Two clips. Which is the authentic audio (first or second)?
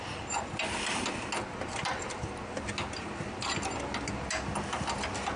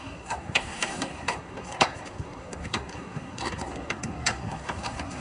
first